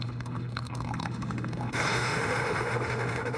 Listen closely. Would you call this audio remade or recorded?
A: remade